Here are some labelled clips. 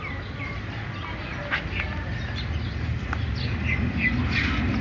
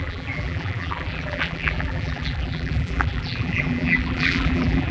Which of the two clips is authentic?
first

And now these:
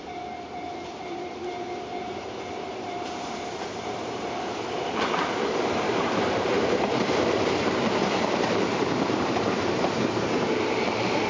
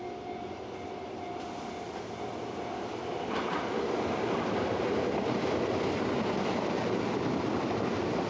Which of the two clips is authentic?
second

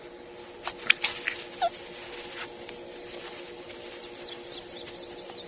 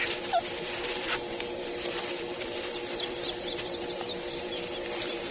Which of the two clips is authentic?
first